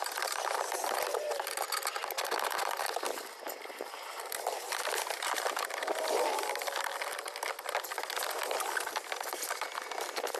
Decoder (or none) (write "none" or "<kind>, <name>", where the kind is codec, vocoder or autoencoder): vocoder, BigVGAN v2